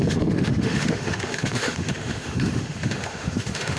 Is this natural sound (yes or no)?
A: no